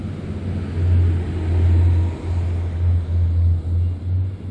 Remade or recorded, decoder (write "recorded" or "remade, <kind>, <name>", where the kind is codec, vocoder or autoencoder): recorded